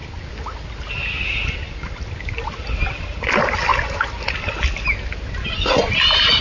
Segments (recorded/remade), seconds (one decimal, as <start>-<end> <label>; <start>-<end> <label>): 0.0-6.4 recorded

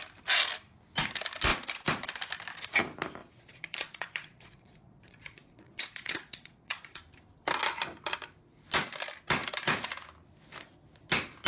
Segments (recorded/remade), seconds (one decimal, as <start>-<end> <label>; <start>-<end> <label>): 0.0-3.2 recorded; 3.2-7.0 remade; 7.0-11.5 recorded

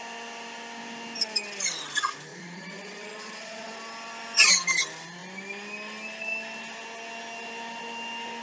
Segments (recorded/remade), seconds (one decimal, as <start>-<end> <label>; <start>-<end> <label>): 0.0-2.3 recorded; 2.3-3.7 remade; 3.7-8.4 recorded

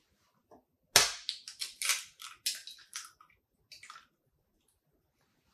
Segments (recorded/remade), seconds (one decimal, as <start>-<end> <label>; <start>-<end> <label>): 0.0-5.5 recorded

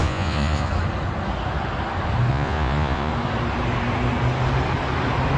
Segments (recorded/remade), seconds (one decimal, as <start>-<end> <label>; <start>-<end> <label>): 0.0-0.7 remade; 0.7-2.3 recorded; 2.3-3.1 remade; 3.1-5.4 recorded

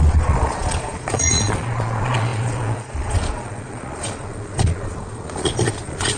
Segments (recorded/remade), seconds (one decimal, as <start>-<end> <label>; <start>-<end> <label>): 0.0-6.2 remade